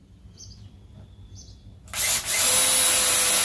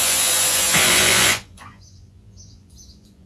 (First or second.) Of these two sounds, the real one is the first